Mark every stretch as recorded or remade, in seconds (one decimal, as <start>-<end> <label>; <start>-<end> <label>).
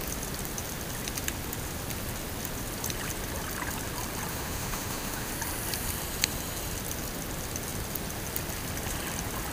0.0-4.3 recorded; 4.3-5.3 remade; 5.3-9.5 recorded